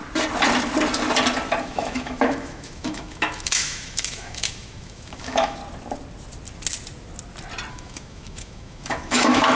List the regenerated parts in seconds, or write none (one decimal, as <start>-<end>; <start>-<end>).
1.6-5.6; 7.7-9.6